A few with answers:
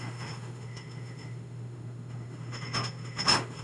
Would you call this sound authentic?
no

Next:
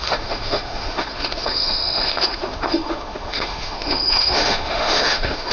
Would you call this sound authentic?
no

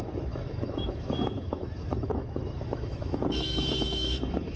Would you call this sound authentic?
no